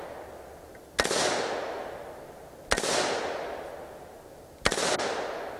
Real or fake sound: real